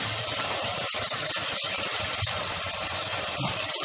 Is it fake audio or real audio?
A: fake